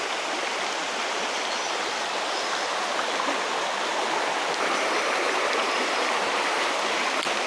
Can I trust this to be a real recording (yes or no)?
yes